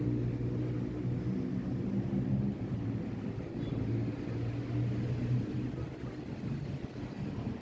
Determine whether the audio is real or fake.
real